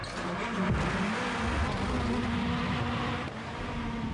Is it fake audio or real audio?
real